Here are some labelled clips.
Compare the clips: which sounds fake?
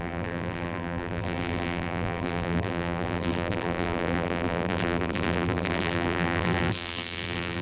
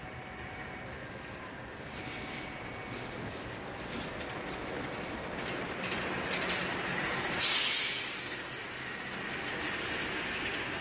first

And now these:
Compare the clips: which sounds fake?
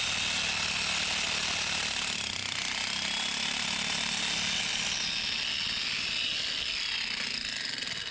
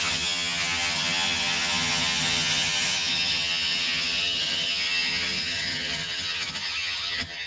second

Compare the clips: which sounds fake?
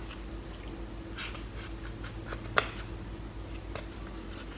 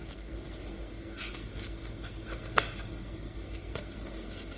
second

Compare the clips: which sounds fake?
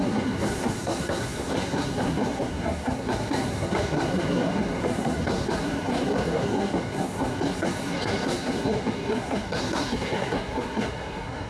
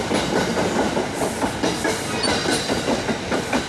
first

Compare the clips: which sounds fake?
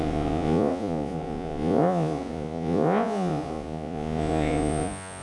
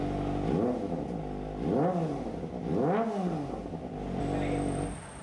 first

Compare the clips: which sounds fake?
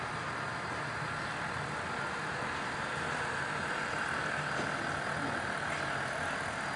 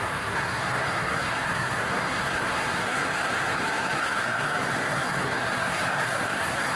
second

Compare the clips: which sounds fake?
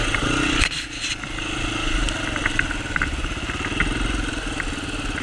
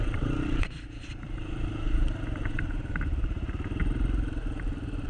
second